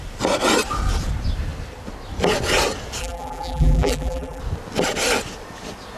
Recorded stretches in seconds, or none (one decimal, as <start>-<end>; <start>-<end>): 0.0-3.0; 4.4-6.0